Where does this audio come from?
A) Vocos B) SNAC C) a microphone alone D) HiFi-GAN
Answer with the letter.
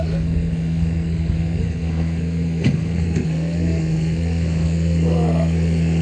B